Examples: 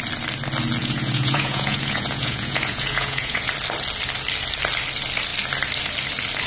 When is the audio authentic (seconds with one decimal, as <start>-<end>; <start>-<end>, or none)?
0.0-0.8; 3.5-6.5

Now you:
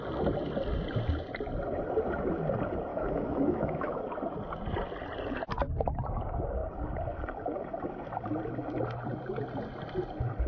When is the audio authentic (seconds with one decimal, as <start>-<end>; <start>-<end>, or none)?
0.0-2.9; 4.0-10.5

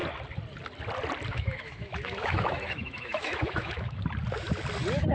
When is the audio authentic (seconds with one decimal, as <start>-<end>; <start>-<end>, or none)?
0.0-1.3; 4.0-5.1

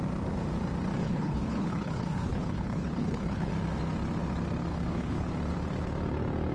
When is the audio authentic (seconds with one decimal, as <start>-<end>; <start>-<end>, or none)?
0.0-1.0; 3.5-4.7; 5.3-6.5

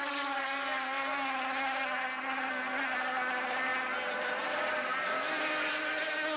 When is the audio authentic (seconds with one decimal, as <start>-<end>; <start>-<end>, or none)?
0.0-6.4